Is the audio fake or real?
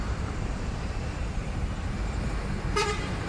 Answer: fake